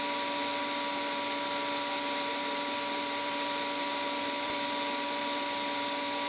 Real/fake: fake